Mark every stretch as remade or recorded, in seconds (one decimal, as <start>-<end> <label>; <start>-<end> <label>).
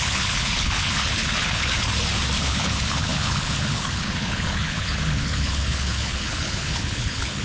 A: 0.0-1.9 remade; 1.9-2.4 recorded; 2.4-7.4 remade